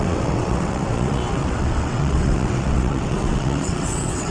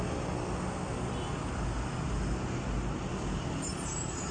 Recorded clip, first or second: second